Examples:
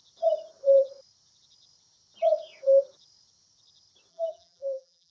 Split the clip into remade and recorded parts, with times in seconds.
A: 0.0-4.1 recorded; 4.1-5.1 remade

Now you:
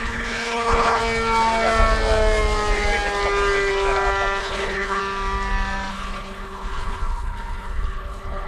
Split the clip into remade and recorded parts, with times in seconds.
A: 0.0-1.0 remade; 1.0-4.4 recorded; 4.4-5.0 remade; 5.0-5.9 recorded; 5.9-8.5 remade

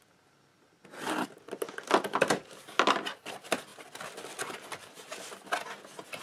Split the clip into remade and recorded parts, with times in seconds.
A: 0.0-6.2 recorded

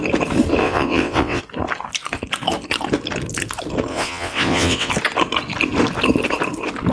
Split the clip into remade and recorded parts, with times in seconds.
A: 0.0-0.6 recorded; 0.6-1.4 remade; 1.4-3.9 recorded; 3.9-4.9 remade; 4.9-6.9 recorded